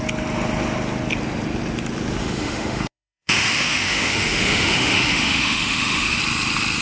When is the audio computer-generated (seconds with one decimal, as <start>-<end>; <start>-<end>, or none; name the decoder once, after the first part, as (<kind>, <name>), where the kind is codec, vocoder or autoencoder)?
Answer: 2.2-6.2 (autoencoder, DAC-VAE)